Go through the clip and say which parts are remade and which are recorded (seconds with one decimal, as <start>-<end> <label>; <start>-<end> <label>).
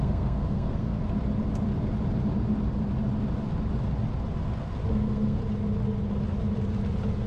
0.0-1.0 remade; 1.0-4.9 recorded; 4.9-5.4 remade; 5.4-7.3 recorded